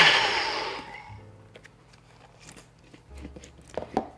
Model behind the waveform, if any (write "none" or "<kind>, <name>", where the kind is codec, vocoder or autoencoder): none